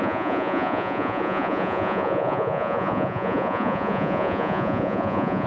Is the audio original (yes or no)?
no